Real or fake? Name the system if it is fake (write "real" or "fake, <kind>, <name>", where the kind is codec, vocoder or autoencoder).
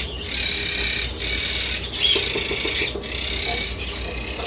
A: real